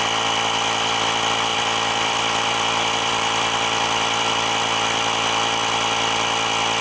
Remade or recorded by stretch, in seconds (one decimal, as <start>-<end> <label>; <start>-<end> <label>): 0.0-1.5 recorded; 1.5-4.3 remade; 4.3-6.8 recorded

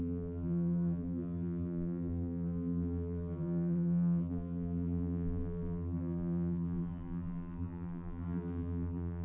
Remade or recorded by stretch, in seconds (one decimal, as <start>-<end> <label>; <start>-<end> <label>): 0.0-9.2 remade